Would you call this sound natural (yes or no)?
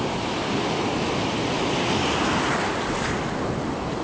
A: yes